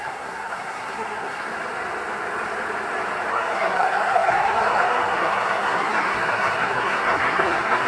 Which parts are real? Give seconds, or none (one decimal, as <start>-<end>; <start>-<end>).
1.5-3.3